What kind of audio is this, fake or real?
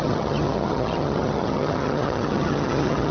fake